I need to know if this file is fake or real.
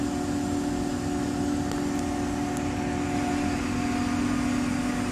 real